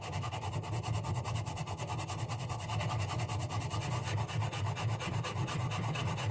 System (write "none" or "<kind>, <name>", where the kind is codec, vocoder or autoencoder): none